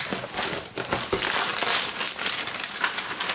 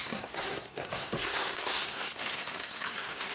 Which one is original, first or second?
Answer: first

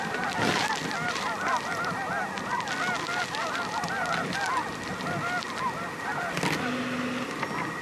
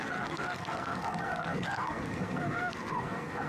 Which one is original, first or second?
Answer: first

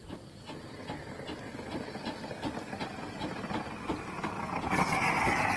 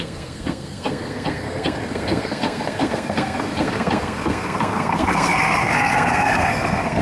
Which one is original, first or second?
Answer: first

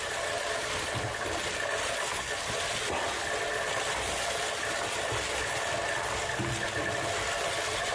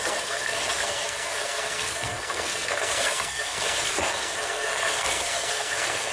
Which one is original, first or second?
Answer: first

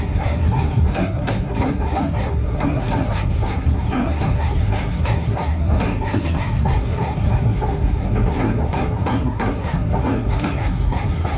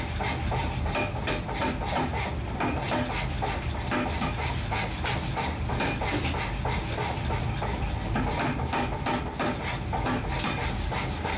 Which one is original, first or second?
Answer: second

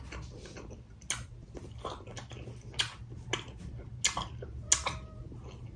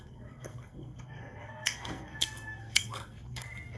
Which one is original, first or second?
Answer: first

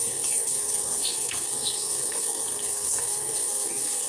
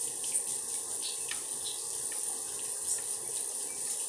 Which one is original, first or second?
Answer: second